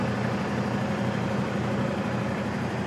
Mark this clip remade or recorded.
recorded